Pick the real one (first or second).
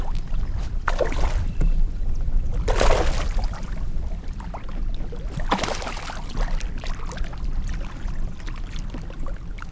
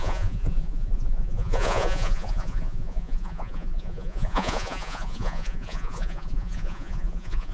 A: first